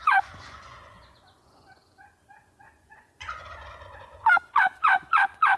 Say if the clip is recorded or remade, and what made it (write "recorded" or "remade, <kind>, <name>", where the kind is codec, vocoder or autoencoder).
remade, vocoder, Vocos